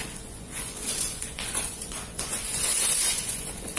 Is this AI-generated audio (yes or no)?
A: yes